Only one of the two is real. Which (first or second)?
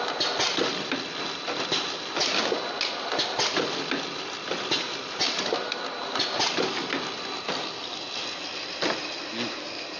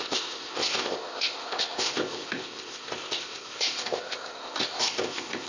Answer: first